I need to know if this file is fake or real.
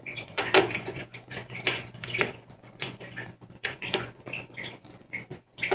fake